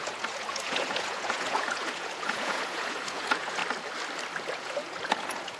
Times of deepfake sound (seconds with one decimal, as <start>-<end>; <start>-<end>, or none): 0.0-3.6; 4.4-5.6